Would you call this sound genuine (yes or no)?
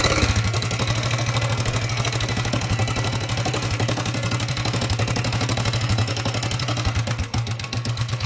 no